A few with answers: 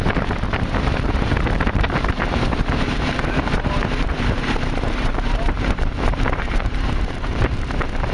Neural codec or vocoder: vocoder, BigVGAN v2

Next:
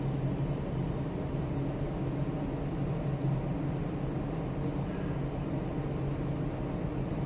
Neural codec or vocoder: none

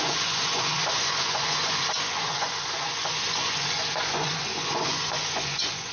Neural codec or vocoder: vocoder, Vocos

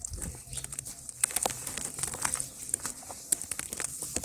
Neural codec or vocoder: none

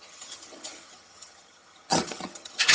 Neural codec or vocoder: vocoder, HiFi-GAN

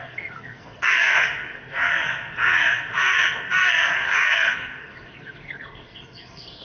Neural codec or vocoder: codec, SNAC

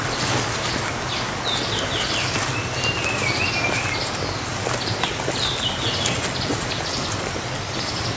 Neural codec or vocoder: none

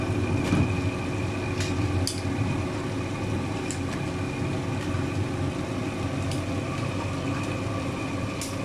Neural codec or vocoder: none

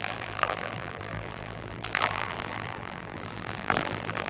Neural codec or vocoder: vocoder, BigVGAN v2